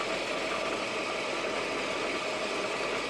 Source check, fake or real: real